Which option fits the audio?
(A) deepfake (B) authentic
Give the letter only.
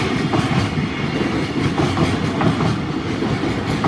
B